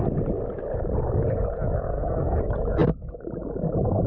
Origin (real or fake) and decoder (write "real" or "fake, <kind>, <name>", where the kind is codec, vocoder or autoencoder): real